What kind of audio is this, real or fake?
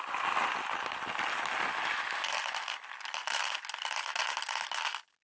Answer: real